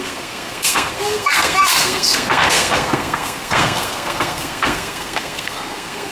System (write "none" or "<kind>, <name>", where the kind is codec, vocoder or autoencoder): codec, SNAC